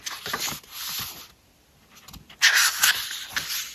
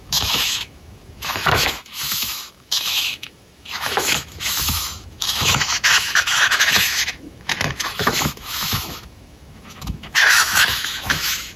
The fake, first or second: second